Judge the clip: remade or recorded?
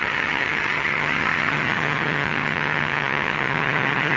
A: remade